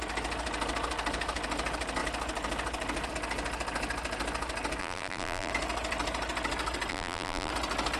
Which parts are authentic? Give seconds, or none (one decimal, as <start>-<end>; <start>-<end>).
0.0-4.8; 5.5-6.9; 7.5-8.0